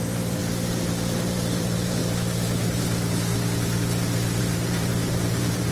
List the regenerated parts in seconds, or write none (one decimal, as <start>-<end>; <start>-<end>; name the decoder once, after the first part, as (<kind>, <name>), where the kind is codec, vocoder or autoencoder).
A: 0.0-0.4 (vocoder, BigVGAN v2); 1.3-2.0; 4.4-5.7